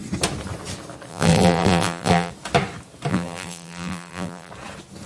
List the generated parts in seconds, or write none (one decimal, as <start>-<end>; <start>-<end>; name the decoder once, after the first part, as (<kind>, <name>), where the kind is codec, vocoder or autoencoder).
1.1-2.3 (vocoder, BigVGAN v2); 3.1-4.5